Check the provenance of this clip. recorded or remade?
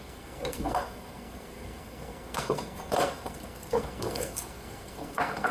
remade